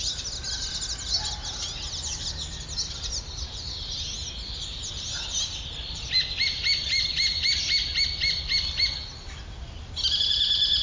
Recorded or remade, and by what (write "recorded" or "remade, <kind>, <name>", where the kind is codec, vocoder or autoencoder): recorded